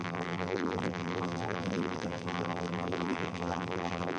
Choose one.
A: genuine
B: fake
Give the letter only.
B